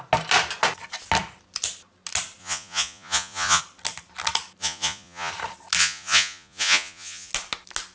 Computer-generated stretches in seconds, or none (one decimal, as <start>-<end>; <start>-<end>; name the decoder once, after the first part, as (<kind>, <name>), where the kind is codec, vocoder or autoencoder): 2.4-3.6 (vocoder, Vocos); 4.6-5.3; 5.8-7.3